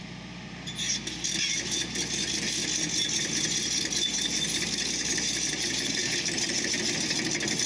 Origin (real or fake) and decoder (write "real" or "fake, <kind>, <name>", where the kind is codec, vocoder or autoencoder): real